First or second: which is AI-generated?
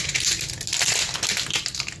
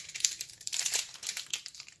second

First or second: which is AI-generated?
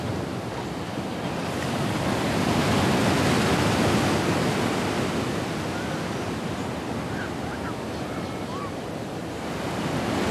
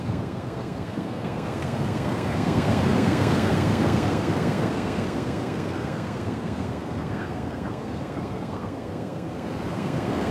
second